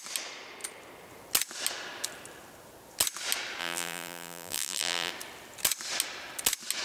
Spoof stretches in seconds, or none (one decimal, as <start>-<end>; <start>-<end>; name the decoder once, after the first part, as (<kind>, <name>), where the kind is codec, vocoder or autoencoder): 3.6-5.1 (vocoder, BigVGAN v2)